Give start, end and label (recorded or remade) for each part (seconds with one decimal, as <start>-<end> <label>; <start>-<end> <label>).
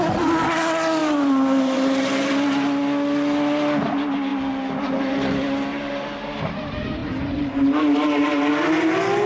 0.0-1.0 recorded; 1.0-2.3 remade; 2.3-5.7 recorded; 5.7-6.3 remade; 6.3-7.0 recorded; 7.0-8.3 remade; 8.3-9.3 recorded